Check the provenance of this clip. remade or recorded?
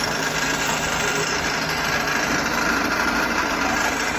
recorded